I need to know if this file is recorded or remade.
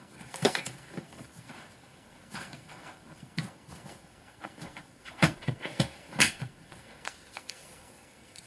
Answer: remade